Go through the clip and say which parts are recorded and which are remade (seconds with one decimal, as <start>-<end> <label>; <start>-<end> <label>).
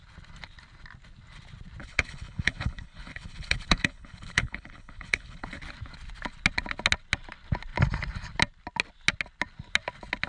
0.0-1.8 recorded; 1.8-5.6 remade; 5.6-10.3 recorded